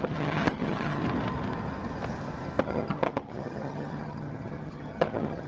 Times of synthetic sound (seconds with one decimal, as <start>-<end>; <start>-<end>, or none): 0.0-1.0; 2.6-5.5